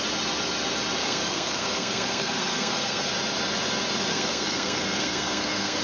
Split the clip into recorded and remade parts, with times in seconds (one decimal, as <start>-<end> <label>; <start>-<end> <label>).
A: 0.0-1.0 recorded; 1.0-3.1 remade; 3.1-4.1 recorded; 4.1-5.8 remade